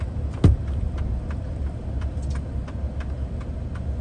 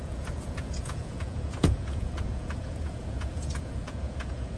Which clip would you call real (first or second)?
first